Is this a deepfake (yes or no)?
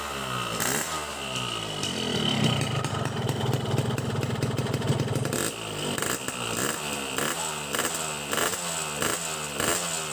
no